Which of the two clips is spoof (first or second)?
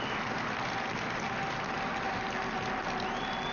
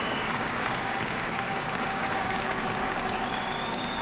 second